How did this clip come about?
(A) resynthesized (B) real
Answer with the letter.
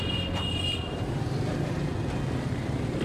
A